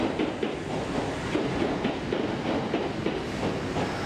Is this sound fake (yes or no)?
no